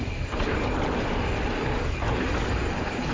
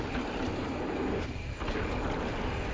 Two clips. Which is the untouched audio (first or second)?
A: second